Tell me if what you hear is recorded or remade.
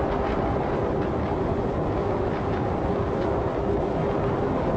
recorded